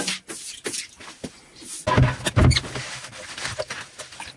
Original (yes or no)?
yes